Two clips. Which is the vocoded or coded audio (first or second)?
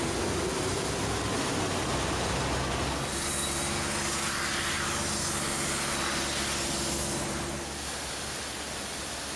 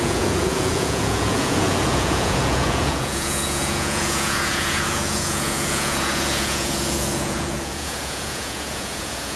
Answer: second